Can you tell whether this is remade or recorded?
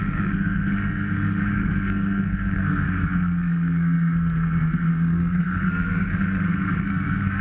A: remade